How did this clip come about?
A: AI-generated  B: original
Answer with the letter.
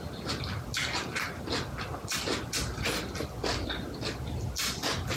B